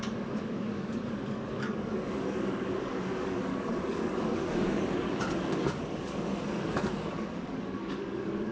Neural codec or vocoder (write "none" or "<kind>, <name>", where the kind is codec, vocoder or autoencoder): codec, DAC